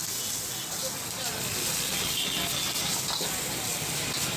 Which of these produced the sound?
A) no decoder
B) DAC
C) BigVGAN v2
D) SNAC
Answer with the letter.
A